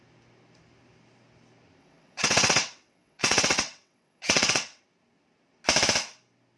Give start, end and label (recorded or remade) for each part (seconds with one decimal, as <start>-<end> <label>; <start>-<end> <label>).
0.0-1.8 recorded; 1.8-4.8 remade; 4.8-6.6 recorded

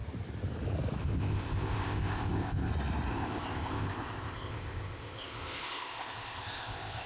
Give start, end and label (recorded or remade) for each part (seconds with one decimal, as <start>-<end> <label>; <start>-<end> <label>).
0.0-1.0 recorded; 1.0-2.7 remade; 2.7-3.1 recorded; 3.1-7.1 remade

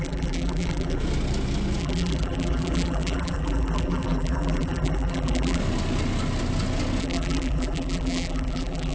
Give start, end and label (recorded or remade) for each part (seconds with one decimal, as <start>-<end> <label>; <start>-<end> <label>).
0.0-1.0 remade; 1.0-1.8 recorded; 1.8-5.6 remade; 5.6-7.0 recorded; 7.0-8.9 remade

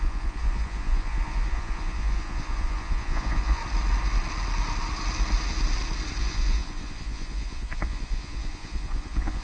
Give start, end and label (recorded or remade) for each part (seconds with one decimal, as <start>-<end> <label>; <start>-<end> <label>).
0.0-3.6 remade; 3.6-6.2 recorded; 6.2-9.4 remade

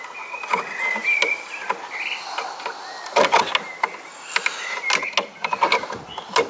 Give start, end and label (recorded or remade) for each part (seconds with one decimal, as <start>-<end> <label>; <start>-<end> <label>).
0.0-6.5 recorded

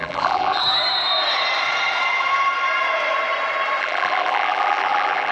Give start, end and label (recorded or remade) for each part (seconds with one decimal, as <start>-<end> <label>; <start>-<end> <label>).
0.0-0.6 remade; 0.6-3.8 recorded; 3.8-5.3 remade

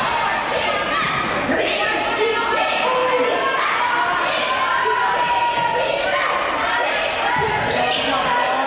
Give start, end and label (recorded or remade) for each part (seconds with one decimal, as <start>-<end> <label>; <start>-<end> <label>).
0.0-3.0 recorded; 3.0-3.6 remade; 3.6-4.7 recorded; 4.7-5.5 remade; 5.5-6.6 recorded; 6.6-7.2 remade; 7.2-8.7 recorded

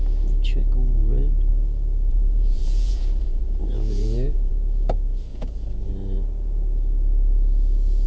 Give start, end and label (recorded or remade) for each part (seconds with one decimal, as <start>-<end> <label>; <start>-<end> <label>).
0.0-2.1 recorded; 2.1-4.5 remade; 4.5-5.3 recorded; 5.3-5.9 remade; 5.9-8.1 recorded